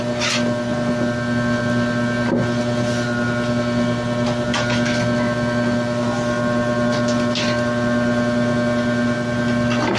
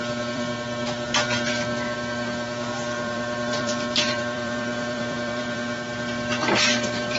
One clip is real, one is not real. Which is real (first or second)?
first